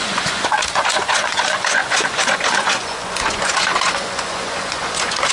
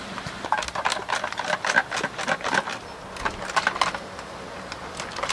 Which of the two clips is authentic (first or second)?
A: second